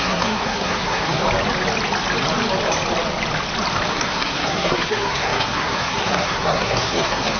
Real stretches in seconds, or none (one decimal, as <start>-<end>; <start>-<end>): 1.2-3.9